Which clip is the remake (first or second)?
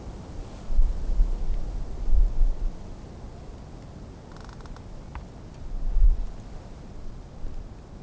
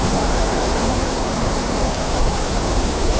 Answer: second